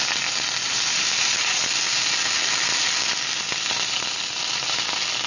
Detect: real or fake real